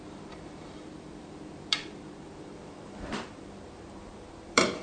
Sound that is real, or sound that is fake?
fake